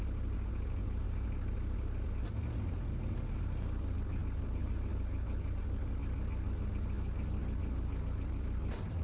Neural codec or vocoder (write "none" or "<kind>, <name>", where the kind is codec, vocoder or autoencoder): none